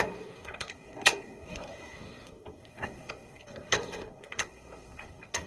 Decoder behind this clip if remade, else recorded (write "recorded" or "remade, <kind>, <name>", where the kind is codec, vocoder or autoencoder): remade, codec, SNAC